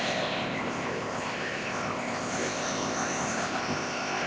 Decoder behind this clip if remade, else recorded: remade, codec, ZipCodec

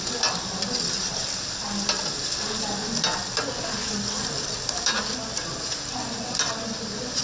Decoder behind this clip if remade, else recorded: recorded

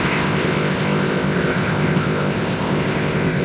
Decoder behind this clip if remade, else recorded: remade, codec, ZipCodec